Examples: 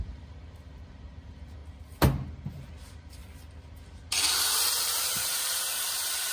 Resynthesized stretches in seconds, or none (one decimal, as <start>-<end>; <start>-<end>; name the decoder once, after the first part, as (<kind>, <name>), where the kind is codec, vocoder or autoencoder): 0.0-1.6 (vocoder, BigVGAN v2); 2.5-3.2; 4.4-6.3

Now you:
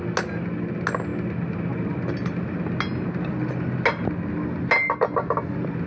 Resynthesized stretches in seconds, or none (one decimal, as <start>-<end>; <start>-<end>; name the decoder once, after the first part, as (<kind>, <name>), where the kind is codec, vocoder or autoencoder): none

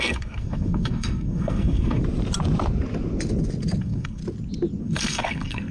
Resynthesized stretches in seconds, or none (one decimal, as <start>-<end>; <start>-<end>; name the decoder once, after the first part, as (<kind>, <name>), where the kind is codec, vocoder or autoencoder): 0.0-2.0 (codec, SNAC); 3.8-4.2; 4.8-5.7

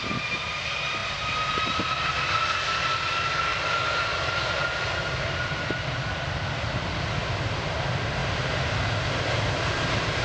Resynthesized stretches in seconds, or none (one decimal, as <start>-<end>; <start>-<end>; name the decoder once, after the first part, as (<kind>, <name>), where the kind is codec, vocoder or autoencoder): none

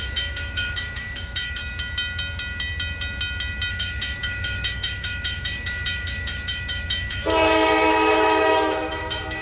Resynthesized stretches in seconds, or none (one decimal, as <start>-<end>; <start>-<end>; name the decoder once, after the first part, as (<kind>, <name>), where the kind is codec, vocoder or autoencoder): 0.0-1.6 (autoencoder, DAC-VAE); 3.7-9.4

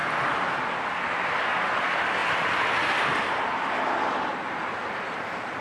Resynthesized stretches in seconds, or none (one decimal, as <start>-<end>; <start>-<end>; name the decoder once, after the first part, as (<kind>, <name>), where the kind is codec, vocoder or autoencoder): none

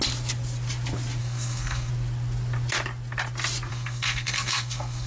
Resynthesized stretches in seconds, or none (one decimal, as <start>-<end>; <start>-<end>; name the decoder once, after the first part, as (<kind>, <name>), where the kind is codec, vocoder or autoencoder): 1.2-1.9 (codec, SNAC); 3.7-5.1